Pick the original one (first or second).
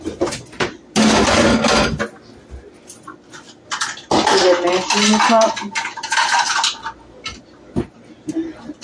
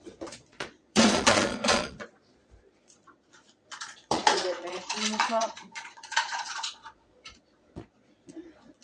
first